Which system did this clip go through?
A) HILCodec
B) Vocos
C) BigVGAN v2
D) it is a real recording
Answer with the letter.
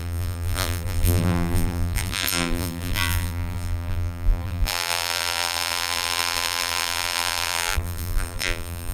C